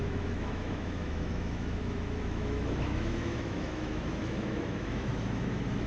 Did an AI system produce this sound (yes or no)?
yes